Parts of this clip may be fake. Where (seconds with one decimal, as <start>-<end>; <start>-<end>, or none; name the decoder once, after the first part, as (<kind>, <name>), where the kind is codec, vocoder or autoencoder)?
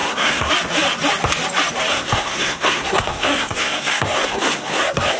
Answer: 0.0-0.5 (codec, SNAC); 1.9-5.2